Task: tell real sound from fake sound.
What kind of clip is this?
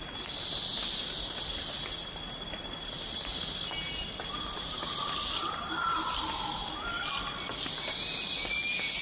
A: real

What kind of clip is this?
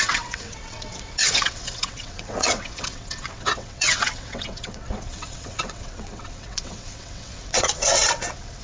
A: fake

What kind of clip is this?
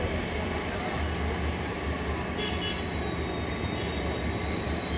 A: real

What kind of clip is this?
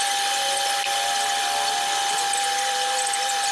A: real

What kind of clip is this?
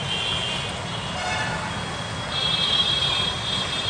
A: real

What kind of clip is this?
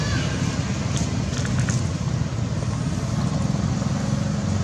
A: real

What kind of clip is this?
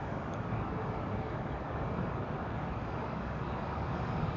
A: fake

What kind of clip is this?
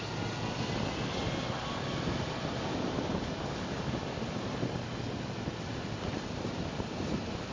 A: real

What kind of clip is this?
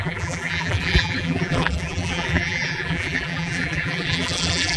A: fake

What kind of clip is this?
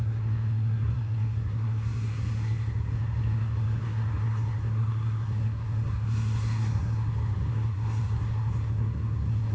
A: fake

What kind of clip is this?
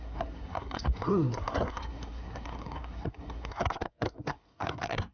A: fake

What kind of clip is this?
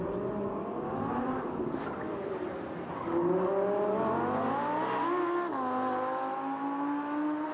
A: real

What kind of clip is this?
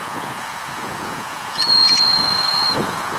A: fake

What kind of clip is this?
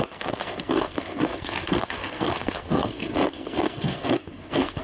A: fake